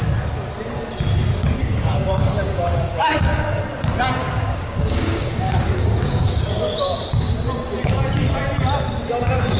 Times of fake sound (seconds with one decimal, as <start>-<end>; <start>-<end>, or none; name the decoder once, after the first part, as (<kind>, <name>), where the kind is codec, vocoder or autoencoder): 1.6-3.6 (codec, DAC); 4.2-6.3